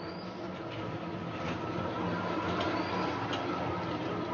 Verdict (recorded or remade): recorded